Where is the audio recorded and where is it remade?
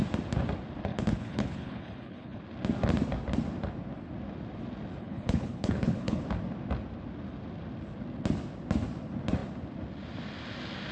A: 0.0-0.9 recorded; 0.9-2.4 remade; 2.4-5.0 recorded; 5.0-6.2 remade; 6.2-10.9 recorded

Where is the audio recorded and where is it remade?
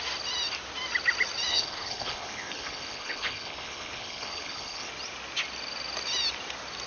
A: 0.0-1.5 recorded; 1.5-4.9 remade; 4.9-6.9 recorded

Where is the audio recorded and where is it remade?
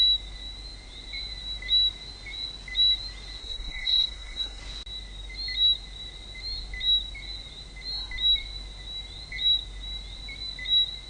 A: 0.0-3.4 recorded; 3.4-4.6 remade; 4.6-11.1 recorded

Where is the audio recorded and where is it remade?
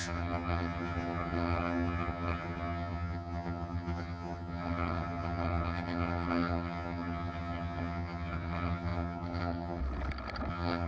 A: 0.0-9.8 remade; 9.8-10.5 recorded; 10.5-10.9 remade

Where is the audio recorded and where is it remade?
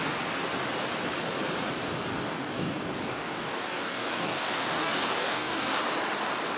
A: 0.0-2.1 recorded; 2.1-5.8 remade; 5.8-6.6 recorded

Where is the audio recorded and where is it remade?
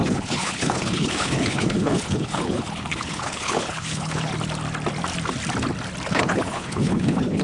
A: 0.0-4.3 remade; 4.3-6.1 recorded; 6.1-7.4 remade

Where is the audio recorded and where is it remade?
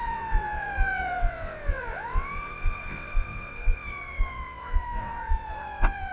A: 0.0-6.1 remade